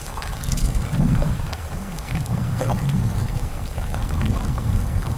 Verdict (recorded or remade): remade